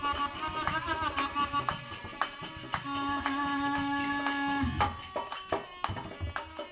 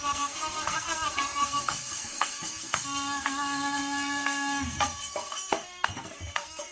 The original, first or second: first